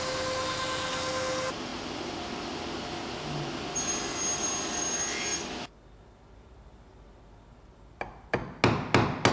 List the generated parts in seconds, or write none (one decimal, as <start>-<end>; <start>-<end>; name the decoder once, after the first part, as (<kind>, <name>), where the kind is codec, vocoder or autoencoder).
none